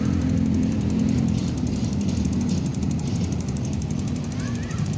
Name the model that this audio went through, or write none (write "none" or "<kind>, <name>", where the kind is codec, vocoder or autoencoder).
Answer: vocoder, BigVGAN v2